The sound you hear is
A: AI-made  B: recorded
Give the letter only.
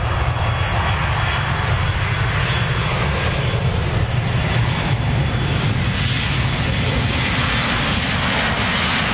B